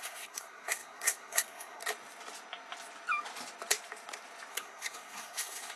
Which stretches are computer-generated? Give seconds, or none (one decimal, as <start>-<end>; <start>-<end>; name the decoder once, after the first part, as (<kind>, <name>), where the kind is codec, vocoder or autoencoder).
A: 0.0-1.8 (codec, SNAC); 4.5-5.8